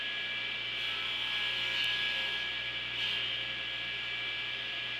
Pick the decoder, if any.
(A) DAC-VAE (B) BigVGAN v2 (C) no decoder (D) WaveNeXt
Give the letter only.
C